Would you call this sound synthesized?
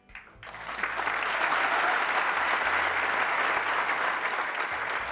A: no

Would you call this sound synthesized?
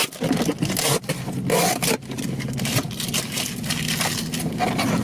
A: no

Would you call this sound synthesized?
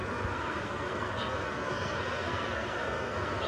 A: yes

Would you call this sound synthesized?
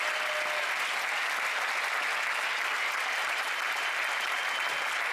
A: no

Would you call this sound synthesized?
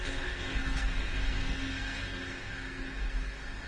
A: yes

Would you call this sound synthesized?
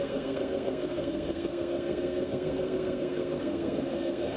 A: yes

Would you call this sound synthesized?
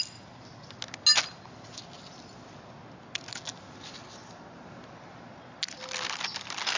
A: no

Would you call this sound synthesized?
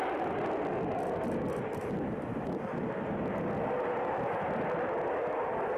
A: no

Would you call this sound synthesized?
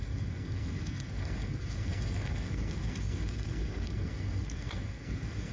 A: yes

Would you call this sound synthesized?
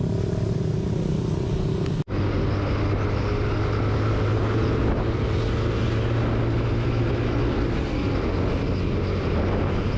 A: no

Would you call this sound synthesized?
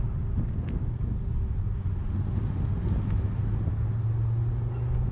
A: no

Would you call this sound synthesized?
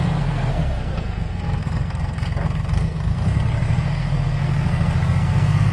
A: yes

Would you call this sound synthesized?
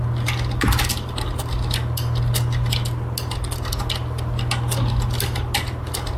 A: no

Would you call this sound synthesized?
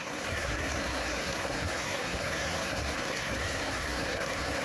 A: yes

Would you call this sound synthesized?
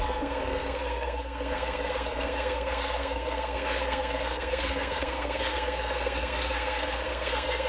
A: yes